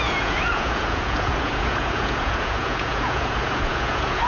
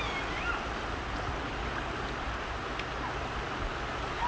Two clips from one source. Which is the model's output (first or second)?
first